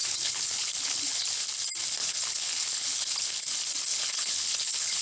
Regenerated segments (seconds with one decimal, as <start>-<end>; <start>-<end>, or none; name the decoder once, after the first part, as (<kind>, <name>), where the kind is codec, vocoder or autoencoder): 0.0-1.4 (codec, HILCodec); 2.0-3.5; 3.9-5.0